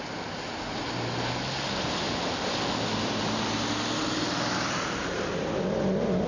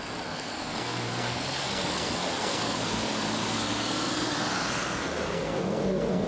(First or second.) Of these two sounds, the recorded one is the first